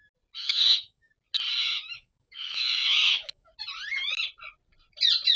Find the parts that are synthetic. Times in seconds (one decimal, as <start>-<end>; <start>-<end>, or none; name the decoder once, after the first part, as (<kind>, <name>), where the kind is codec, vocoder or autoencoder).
0.4-1.1 (autoencoder, DAC-VAE); 1.6-3.5

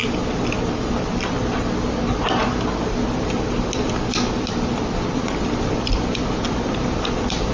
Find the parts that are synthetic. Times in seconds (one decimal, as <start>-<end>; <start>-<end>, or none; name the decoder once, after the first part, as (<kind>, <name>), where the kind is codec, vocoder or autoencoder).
0.0-7.5 (vocoder, BigVGAN v2)